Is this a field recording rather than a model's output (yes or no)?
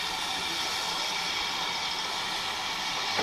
yes